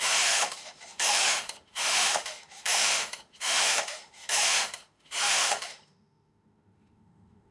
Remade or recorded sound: remade